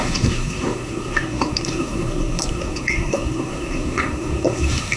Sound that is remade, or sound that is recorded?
remade